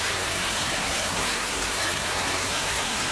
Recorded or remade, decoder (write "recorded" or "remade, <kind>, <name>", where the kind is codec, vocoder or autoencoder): remade, codec, SNAC